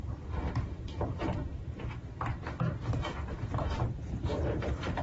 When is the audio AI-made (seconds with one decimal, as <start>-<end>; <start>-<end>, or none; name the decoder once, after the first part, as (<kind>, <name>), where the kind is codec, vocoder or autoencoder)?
0.0-1.2 (vocoder, BigVGAN v2); 4.2-5.0

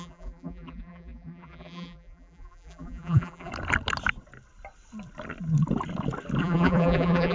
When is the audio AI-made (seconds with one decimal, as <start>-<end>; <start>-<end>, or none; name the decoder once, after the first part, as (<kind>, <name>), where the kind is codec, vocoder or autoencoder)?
0.0-3.5 (vocoder, BigVGAN v2); 6.4-7.3

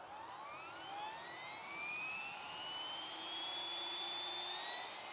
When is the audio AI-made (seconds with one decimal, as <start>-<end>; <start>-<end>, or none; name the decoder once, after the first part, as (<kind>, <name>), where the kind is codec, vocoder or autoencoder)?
none

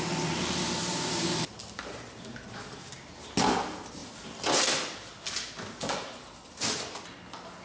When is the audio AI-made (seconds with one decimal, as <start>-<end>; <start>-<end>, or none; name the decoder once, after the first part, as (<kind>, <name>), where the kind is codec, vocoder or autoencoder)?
0.8-1.4 (vocoder, BigVGAN v2)

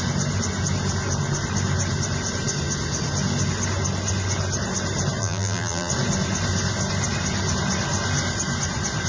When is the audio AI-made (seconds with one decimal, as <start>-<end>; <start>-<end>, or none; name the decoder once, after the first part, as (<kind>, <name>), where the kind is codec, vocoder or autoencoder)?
5.2-5.9 (vocoder, BigVGAN v2)